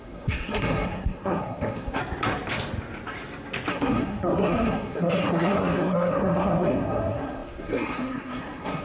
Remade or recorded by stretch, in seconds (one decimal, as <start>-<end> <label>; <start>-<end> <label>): 0.0-2.0 remade; 2.0-3.7 recorded; 3.7-8.8 remade